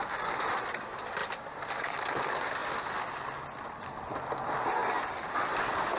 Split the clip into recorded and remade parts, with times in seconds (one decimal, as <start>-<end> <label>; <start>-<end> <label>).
0.0-1.2 recorded; 1.2-2.1 remade; 2.1-4.8 recorded; 4.8-5.5 remade; 5.5-6.0 recorded